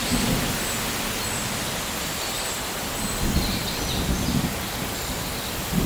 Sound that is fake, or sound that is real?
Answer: real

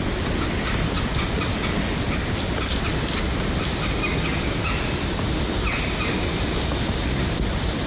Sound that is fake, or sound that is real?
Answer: real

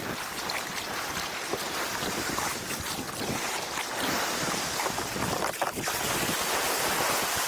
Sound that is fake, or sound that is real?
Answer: real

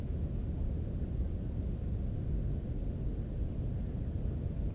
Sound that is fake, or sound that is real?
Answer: real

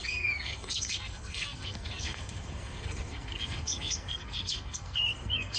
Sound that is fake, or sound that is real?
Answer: fake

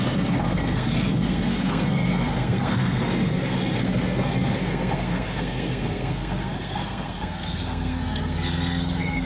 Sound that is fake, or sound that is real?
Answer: fake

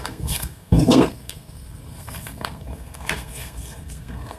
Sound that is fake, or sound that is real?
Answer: fake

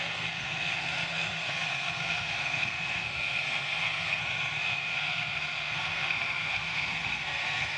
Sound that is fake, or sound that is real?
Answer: fake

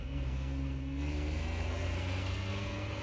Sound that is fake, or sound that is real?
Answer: fake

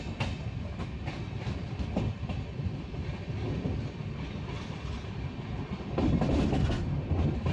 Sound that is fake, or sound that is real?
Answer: real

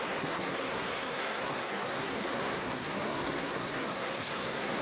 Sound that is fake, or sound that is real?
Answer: fake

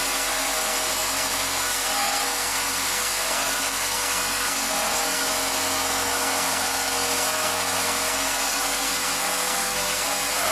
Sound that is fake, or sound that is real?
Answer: fake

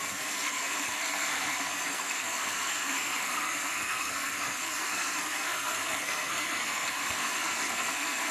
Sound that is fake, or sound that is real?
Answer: fake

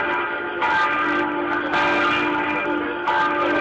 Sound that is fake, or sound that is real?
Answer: real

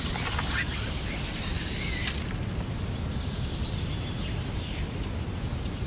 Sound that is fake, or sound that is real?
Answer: real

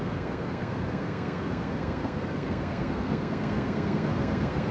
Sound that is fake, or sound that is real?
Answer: fake